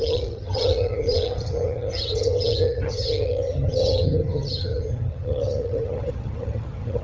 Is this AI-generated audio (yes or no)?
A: yes